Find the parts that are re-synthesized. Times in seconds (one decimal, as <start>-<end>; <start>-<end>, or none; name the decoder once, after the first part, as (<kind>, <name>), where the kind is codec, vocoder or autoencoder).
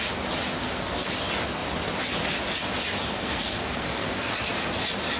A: 0.6-1.1 (codec, SNAC); 3.1-4.3